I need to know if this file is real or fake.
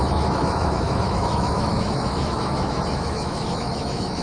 fake